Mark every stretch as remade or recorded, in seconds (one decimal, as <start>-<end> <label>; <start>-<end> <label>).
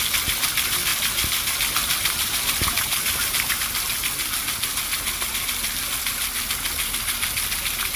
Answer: 0.0-0.9 recorded; 0.9-3.6 remade; 3.6-8.0 recorded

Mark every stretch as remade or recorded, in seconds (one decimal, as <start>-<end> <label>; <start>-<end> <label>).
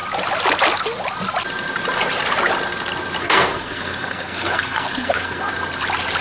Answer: 0.0-3.2 recorded; 3.2-5.5 remade; 5.5-6.2 recorded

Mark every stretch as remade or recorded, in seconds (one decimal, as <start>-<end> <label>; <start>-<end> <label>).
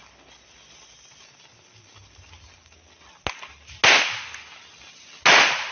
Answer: 0.0-5.7 recorded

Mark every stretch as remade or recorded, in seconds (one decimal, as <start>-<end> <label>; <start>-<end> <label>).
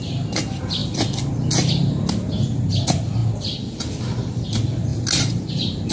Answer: 0.0-5.9 recorded